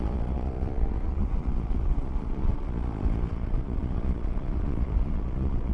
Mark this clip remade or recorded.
remade